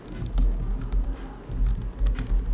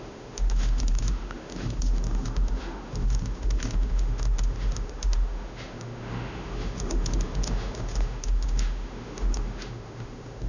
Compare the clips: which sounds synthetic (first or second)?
second